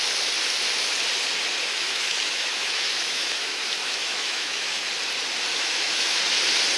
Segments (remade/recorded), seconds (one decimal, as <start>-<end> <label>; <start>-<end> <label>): 0.0-1.7 recorded; 1.7-4.9 remade; 4.9-5.5 recorded; 5.5-6.2 remade; 6.2-6.8 recorded